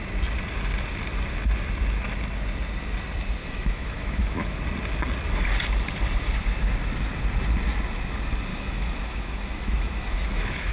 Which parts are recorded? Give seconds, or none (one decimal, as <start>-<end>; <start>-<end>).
0.0-3.4; 4.6-8.5